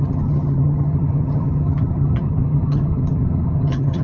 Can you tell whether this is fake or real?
fake